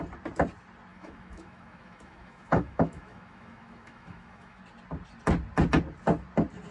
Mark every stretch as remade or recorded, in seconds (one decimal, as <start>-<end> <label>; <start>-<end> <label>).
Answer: 0.0-0.9 recorded; 0.9-4.6 remade; 4.6-6.7 recorded